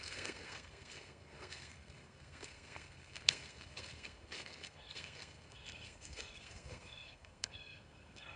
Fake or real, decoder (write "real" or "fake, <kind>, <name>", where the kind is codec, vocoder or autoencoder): fake, codec, SNAC